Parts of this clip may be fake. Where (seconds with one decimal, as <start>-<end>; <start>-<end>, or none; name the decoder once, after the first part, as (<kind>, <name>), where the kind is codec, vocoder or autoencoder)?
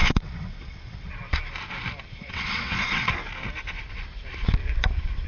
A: 0.0-1.1 (vocoder, WaveNeXt); 2.2-3.1